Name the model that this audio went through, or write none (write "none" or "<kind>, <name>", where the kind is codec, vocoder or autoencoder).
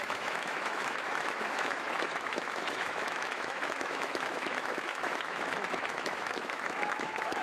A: autoencoder, DAC-VAE